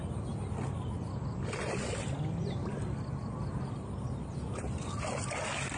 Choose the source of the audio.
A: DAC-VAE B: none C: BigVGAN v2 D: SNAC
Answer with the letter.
B